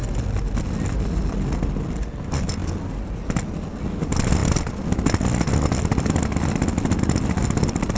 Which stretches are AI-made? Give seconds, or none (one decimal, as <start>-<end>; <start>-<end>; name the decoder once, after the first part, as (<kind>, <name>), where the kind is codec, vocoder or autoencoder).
none